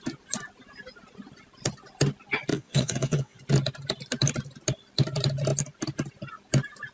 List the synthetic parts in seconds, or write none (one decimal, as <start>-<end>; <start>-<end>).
2.5-3.4

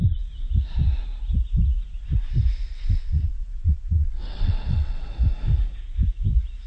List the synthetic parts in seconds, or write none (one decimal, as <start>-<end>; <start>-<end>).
2.7-5.1

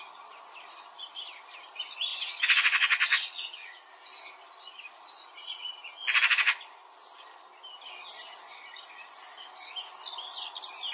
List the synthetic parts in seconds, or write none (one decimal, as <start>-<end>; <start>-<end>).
2.1-3.8

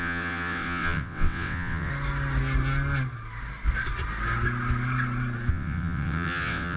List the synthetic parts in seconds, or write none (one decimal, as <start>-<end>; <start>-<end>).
0.0-1.9; 5.5-6.8

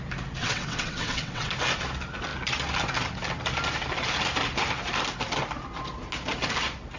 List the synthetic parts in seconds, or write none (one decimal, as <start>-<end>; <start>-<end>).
0.4-1.5

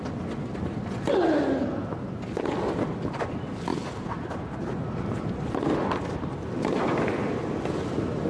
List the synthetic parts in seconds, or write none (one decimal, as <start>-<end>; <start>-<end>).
none

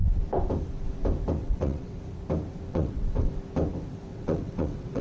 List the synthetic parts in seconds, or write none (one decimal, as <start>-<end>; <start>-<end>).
1.4-2.0; 2.7-3.3; 4.1-5.0

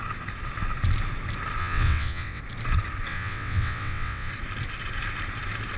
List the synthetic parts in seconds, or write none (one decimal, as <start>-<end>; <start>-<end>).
1.6-2.4; 3.1-4.3